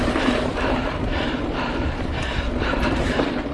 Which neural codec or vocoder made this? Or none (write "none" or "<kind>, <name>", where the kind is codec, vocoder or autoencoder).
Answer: vocoder, BigVGAN v2